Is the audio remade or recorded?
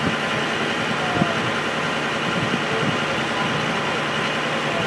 recorded